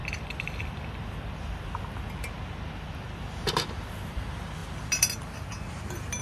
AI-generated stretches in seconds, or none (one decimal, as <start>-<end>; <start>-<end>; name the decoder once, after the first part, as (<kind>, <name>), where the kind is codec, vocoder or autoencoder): none